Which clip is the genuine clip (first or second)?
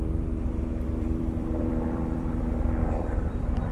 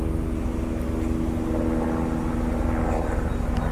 second